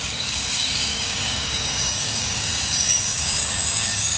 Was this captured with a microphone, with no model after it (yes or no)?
no